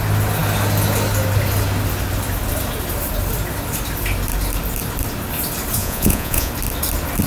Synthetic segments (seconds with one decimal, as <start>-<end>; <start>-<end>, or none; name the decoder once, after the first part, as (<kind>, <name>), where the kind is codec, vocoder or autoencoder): 5.8-6.5 (vocoder, Vocos)